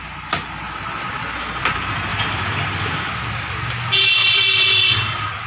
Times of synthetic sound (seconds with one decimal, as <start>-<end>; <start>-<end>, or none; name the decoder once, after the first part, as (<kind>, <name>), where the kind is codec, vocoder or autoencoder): 2.1-3.1 (vocoder, BigVGAN v2); 4.2-5.5